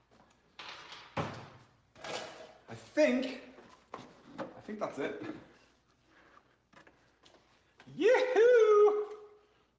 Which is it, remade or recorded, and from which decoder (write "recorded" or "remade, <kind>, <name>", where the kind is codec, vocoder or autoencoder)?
recorded